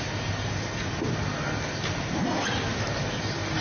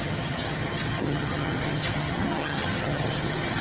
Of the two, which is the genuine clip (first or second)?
first